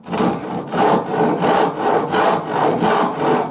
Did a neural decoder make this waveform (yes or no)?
no